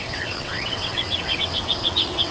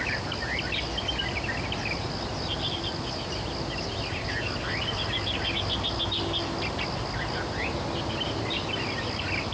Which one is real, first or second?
second